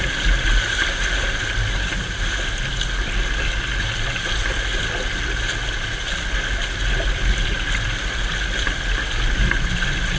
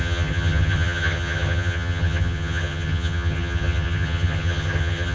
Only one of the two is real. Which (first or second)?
first